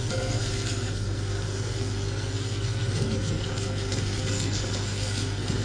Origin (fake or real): fake